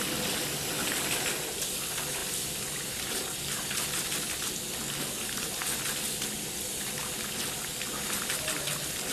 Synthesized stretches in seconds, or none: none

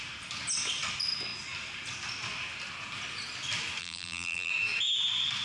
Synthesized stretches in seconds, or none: 3.8-4.5